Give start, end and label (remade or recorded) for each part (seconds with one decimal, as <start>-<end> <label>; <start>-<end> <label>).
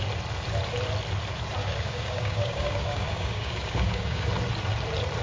0.0-1.6 recorded; 1.6-4.3 remade; 4.3-5.2 recorded